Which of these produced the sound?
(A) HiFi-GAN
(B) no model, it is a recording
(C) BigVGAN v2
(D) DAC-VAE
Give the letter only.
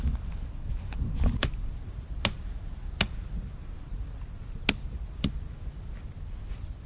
B